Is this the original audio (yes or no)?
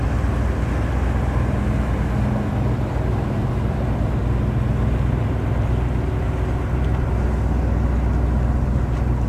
yes